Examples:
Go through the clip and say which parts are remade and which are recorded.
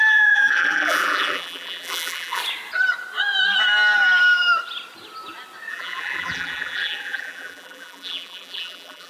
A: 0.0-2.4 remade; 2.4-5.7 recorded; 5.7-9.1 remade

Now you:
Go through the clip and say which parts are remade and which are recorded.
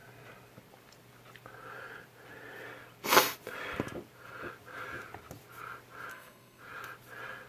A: 0.0-6.1 recorded; 6.1-6.6 remade; 6.6-7.5 recorded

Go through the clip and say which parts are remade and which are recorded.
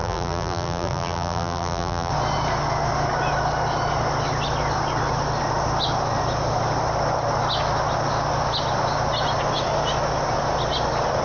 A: 0.0-2.1 remade; 2.1-11.2 recorded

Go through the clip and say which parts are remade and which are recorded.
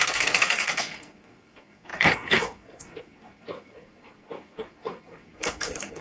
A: 0.0-6.0 remade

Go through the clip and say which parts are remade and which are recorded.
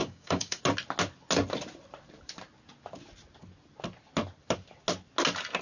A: 0.0-0.6 remade; 0.6-5.6 recorded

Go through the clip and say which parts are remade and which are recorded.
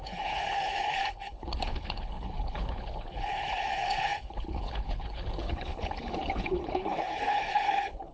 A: 0.0-8.1 remade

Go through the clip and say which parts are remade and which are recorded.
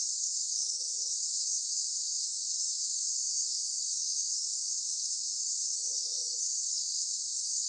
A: 0.0-7.7 remade